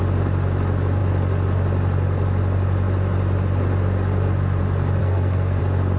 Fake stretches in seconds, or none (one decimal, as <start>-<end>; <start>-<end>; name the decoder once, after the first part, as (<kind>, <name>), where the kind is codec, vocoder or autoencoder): 5.0-5.6 (codec, SNAC)